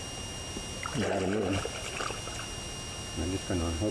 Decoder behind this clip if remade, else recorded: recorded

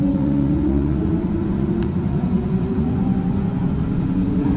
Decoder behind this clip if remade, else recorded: remade, vocoder, Vocos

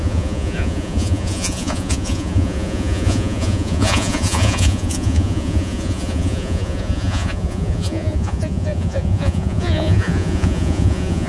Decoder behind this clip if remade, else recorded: remade, vocoder, Vocos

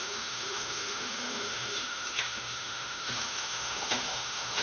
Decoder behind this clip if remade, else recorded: remade, autoencoder, DAC-VAE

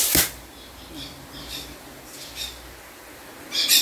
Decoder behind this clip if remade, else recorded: recorded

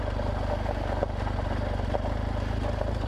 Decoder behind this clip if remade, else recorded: recorded